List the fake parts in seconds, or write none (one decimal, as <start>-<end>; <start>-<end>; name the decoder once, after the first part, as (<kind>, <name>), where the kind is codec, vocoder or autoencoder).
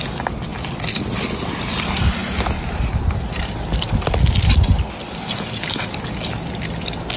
none